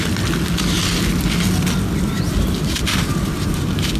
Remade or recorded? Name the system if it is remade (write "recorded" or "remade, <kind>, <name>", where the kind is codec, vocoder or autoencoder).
recorded